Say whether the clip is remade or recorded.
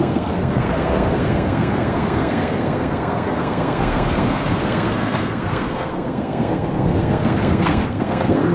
remade